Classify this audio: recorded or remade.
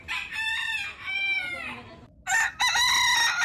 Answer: recorded